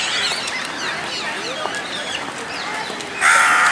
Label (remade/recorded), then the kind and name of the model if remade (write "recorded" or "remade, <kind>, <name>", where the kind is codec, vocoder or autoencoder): recorded